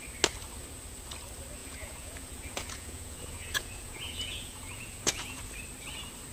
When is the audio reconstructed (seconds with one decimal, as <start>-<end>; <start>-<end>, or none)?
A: 1.6-5.4